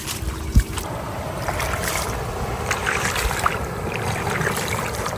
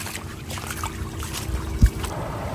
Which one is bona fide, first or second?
second